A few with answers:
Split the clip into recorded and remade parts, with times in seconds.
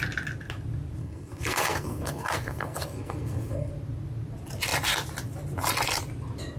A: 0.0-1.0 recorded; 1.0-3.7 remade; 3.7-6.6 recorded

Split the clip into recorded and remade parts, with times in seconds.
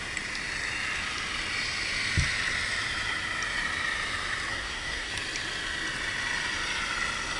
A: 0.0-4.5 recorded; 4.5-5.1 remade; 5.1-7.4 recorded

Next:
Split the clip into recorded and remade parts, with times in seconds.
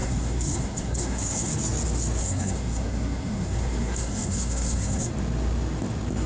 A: 0.0-1.5 remade; 1.5-2.2 recorded; 2.2-5.1 remade; 5.1-6.3 recorded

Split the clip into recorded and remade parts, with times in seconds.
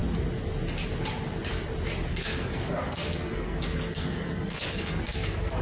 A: 0.0-2.1 recorded; 2.1-5.6 remade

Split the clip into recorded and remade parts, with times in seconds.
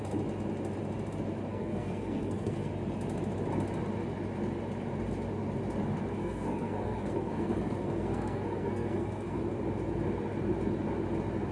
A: 0.0-1.5 recorded; 1.5-2.7 remade; 2.7-6.2 recorded; 6.2-9.4 remade; 9.4-11.5 recorded